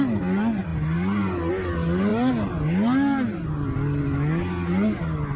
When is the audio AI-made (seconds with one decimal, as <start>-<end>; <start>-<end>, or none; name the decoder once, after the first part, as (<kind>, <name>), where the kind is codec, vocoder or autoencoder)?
none